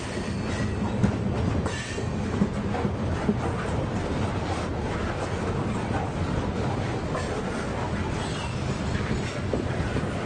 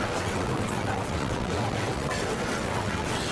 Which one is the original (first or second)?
first